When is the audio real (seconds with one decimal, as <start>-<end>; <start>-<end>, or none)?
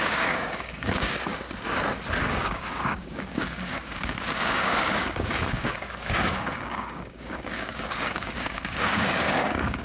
1.3-2.2